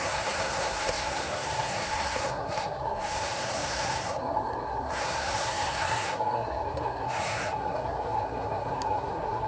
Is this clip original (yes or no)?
no